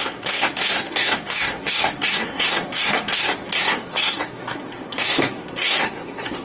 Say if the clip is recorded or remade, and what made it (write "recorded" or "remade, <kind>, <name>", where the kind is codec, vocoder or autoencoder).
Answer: remade, codec, SNAC